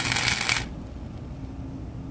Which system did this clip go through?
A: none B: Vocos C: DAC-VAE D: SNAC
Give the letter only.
A